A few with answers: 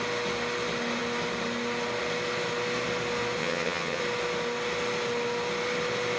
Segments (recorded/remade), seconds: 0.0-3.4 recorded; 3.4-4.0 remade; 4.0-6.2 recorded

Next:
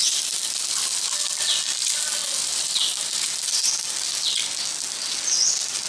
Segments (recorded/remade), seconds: 0.0-5.9 recorded

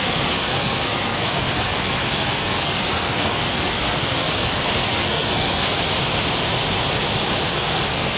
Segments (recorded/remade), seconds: 0.0-5.9 remade; 5.9-7.5 recorded; 7.5-8.2 remade

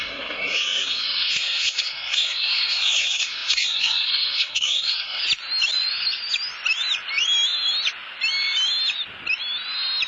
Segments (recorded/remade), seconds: 0.0-5.2 remade; 5.2-10.1 recorded

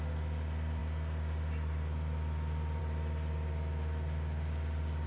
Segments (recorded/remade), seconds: 0.0-5.1 recorded

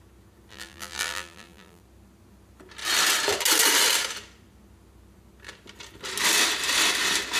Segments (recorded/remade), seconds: 0.0-0.5 recorded; 0.5-1.8 remade; 1.8-7.4 recorded

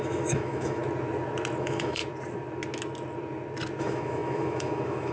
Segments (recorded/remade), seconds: 0.0-0.8 remade; 0.8-1.6 recorded; 1.6-2.0 remade; 2.0-3.8 recorded; 3.8-5.1 remade